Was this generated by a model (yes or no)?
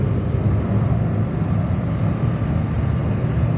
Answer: no